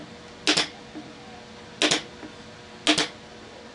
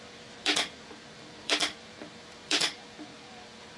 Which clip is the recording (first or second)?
first